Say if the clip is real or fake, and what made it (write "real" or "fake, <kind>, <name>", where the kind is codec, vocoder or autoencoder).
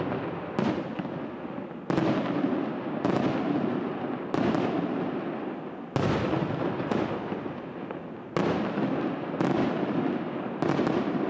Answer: real